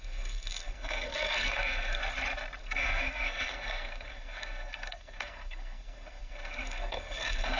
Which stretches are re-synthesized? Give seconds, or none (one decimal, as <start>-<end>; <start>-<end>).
0.0-2.0; 2.6-7.6